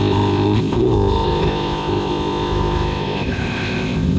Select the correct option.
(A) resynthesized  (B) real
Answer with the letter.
A